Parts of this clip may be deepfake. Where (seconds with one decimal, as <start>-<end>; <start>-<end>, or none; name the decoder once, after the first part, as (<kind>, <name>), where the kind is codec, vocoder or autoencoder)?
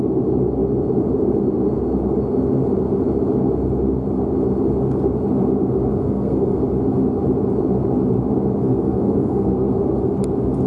5.9-6.6 (codec, SNAC); 8.6-9.8